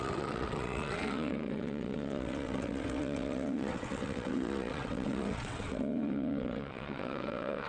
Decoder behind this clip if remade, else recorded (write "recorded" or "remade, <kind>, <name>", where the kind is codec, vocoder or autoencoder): remade, vocoder, WaveNeXt